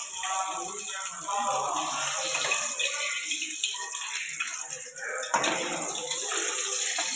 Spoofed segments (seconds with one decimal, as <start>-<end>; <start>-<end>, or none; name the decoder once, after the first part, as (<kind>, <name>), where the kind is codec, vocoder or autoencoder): none